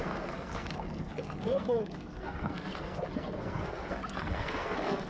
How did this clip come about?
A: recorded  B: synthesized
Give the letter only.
B